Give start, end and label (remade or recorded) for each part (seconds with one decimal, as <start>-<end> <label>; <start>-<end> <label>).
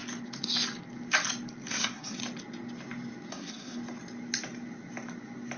0.0-1.7 recorded; 1.7-2.2 remade; 2.2-3.3 recorded; 3.3-3.8 remade; 3.8-5.6 recorded